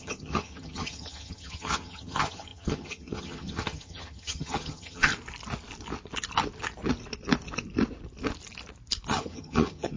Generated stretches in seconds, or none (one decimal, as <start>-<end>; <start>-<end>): 0.0-5.1; 9.1-10.0